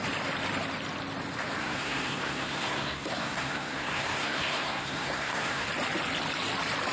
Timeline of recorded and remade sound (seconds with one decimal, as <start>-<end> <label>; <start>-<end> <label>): 0.0-1.6 recorded; 1.6-5.7 remade; 5.7-6.9 recorded